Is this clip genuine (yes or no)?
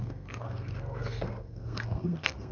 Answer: no